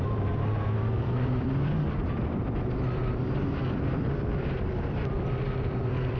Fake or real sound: fake